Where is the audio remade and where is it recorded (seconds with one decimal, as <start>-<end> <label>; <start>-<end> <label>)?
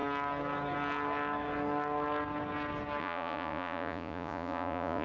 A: 0.0-3.0 recorded; 3.0-5.0 remade